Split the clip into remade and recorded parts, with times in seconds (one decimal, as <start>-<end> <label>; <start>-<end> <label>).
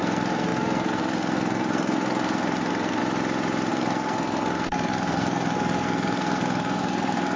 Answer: 0.0-3.0 remade; 3.0-3.7 recorded; 3.7-7.4 remade